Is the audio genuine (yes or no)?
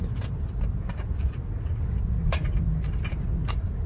yes